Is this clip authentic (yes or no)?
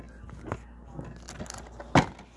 yes